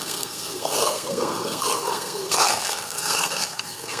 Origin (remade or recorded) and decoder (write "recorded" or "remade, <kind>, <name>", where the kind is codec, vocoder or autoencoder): remade, codec, SNAC